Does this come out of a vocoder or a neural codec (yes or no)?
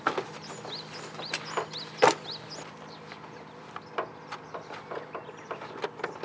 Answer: no